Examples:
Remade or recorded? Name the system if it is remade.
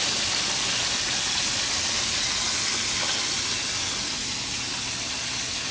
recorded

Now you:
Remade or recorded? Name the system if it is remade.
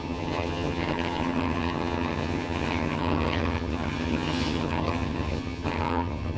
remade, vocoder, HiFi-GAN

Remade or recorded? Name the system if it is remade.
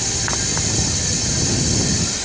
recorded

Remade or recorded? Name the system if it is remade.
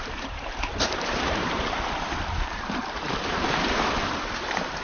remade, vocoder, BigVGAN v2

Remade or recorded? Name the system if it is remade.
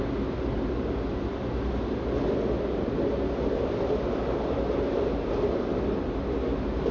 recorded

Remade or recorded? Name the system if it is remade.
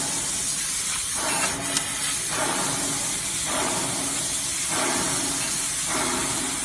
recorded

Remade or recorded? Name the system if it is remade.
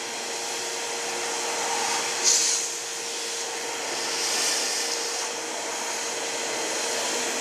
recorded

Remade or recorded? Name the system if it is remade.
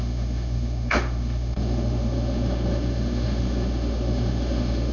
remade, autoencoder, DAC-VAE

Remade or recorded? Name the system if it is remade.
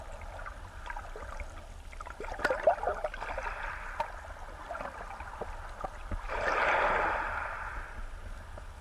recorded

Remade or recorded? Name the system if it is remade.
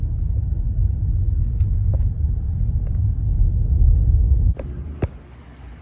recorded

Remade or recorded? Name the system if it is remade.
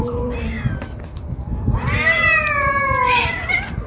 recorded